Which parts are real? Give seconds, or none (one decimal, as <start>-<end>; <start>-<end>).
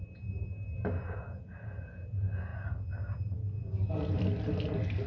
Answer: 0.0-5.1